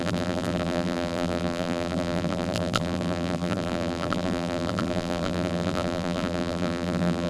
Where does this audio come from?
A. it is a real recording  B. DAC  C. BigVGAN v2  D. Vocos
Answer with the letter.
C